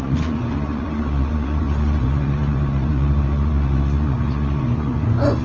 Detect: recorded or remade remade